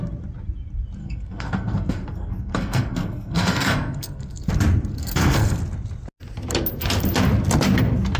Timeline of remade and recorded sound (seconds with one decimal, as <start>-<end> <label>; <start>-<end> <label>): 0.0-1.0 recorded; 1.0-4.5 remade; 4.5-4.9 recorded; 4.9-5.6 remade; 5.6-8.2 recorded